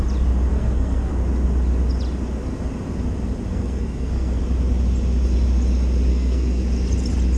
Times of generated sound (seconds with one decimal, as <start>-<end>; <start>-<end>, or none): 0.5-1.1; 3.5-4.4; 6.1-6.6